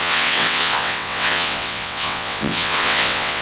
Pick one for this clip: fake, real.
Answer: fake